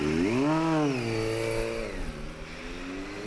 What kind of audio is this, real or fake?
real